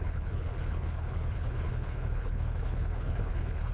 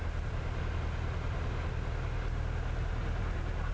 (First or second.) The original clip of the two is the second